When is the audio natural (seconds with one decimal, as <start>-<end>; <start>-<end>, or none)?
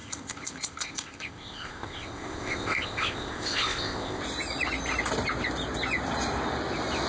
4.2-7.1